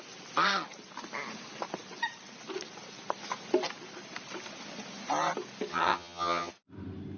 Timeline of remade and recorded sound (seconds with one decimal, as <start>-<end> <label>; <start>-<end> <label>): 0.0-5.7 recorded; 5.7-6.5 remade; 6.5-7.2 recorded